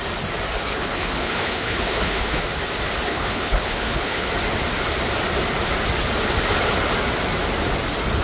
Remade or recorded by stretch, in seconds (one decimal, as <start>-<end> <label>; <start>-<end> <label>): 0.0-0.7 recorded; 0.7-2.4 remade; 2.4-3.1 recorded; 3.1-4.3 remade; 4.3-8.2 recorded